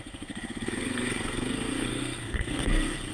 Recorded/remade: remade